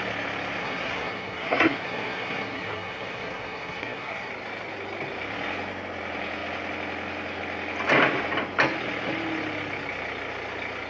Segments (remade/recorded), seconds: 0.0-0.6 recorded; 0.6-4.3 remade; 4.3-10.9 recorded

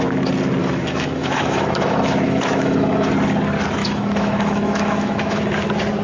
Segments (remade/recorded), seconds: 0.0-0.6 recorded; 0.6-3.1 remade; 3.1-3.8 recorded; 3.8-5.4 remade; 5.4-6.0 recorded

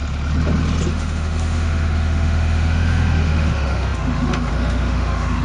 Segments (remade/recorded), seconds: 0.0-0.9 recorded; 0.9-5.4 remade

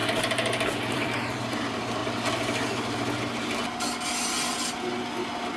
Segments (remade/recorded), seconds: 0.0-0.9 recorded; 0.9-2.0 remade; 2.0-5.6 recorded

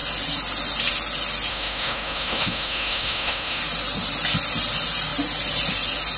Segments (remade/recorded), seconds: 0.0-1.5 recorded; 1.5-3.6 remade; 3.6-6.2 recorded